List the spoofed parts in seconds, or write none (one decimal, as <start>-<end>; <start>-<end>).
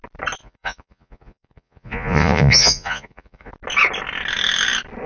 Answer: 0.4-3.5